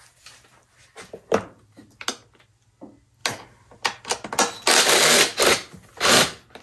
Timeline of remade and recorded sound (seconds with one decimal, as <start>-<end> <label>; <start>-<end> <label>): 0.0-6.6 recorded